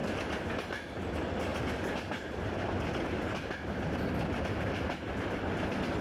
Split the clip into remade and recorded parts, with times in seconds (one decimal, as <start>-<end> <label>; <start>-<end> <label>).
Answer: 0.0-6.0 recorded